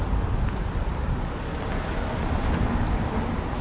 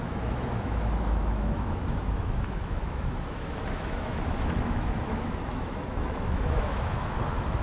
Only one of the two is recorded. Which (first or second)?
first